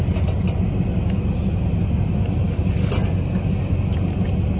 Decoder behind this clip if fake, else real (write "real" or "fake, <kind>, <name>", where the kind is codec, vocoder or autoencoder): real